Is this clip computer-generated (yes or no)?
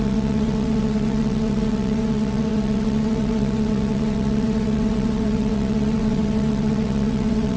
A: yes